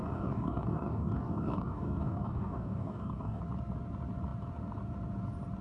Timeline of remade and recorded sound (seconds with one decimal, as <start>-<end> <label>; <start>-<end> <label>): 0.0-3.4 remade; 3.4-5.6 recorded

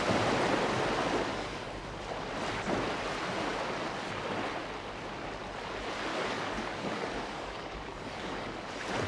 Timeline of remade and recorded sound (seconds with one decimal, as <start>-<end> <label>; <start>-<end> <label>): 0.0-1.3 recorded; 1.3-1.8 remade; 1.8-6.1 recorded; 6.1-8.7 remade; 8.7-9.1 recorded